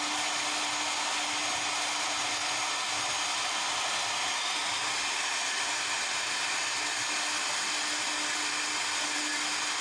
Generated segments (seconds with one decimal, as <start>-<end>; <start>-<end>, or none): none